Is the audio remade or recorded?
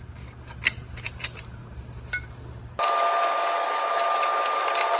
recorded